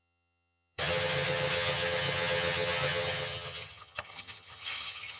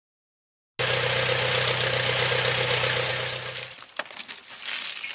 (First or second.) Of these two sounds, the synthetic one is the first